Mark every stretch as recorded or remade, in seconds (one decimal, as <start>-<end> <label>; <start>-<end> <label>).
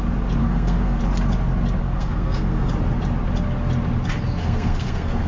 0.0-0.4 recorded; 0.4-1.0 remade; 1.0-1.8 recorded; 1.8-2.7 remade; 2.7-4.4 recorded; 4.4-5.3 remade